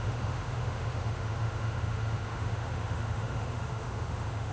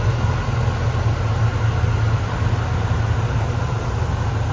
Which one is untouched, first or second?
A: second